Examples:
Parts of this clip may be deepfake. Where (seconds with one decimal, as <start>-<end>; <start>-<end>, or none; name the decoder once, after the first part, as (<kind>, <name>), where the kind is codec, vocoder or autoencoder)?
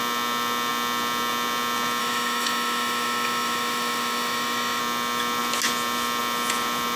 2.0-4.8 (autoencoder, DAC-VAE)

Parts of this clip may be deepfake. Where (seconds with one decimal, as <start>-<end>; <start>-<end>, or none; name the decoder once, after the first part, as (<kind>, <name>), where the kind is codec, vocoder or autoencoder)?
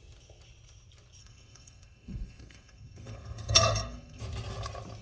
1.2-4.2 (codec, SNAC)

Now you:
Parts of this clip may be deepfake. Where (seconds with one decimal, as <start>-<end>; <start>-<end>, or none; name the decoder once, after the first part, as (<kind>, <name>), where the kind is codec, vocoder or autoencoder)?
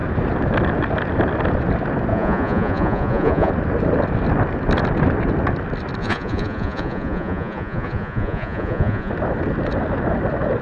2.1-3.5 (vocoder, Vocos); 6.0-9.1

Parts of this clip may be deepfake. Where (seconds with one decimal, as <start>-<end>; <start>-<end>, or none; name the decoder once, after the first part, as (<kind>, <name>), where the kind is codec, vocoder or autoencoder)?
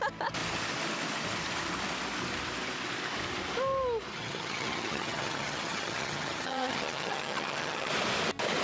4.1-7.9 (vocoder, HiFi-GAN)